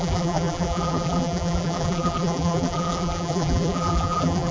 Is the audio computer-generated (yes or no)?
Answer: yes